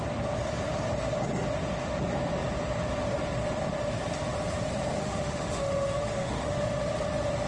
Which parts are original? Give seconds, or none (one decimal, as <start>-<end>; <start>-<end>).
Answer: 0.0-5.0; 6.6-7.5